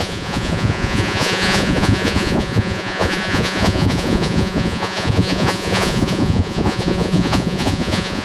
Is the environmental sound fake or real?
fake